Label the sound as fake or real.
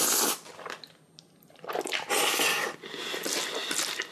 real